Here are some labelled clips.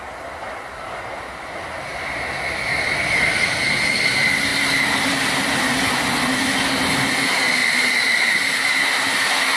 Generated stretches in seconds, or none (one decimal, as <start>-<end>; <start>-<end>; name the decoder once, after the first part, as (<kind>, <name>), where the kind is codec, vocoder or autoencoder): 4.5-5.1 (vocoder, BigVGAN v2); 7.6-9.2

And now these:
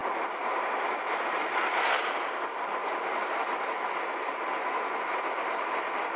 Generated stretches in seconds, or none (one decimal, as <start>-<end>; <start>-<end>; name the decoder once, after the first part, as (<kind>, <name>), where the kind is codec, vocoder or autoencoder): 0.0-3.3 (vocoder, BigVGAN v2)

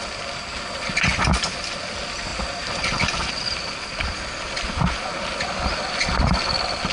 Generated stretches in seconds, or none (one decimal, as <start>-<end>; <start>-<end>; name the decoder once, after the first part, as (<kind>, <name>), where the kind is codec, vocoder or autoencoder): 2.3-5.8 (vocoder, BigVGAN v2)

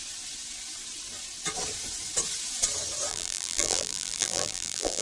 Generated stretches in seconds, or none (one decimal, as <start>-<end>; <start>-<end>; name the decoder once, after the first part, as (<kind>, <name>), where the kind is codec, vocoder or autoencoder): 3.1-5.0 (vocoder, BigVGAN v2)

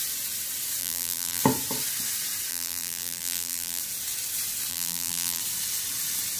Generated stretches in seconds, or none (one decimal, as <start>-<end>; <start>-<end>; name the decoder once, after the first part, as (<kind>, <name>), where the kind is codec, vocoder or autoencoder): 0.8-1.4 (vocoder, BigVGAN v2); 2.5-3.8; 4.7-5.4